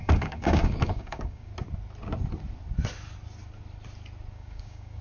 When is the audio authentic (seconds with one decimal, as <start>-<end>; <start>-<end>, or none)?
1.5-4.3